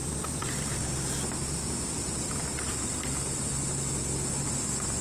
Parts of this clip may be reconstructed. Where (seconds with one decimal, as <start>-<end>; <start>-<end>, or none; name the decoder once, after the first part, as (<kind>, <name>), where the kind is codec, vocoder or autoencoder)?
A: 0.0-3.0 (vocoder, BigVGAN v2)